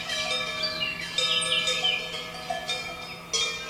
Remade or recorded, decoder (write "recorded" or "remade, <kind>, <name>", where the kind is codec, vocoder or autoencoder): recorded